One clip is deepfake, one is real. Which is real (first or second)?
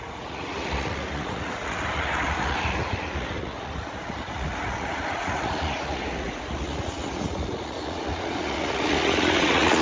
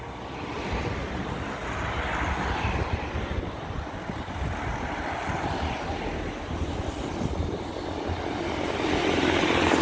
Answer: second